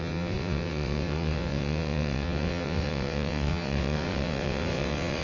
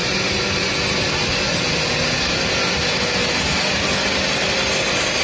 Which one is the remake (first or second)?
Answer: first